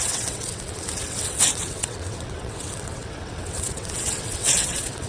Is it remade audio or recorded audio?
remade